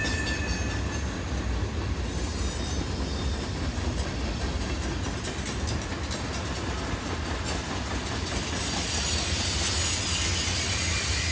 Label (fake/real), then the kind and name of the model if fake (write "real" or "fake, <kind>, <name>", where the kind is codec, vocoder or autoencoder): real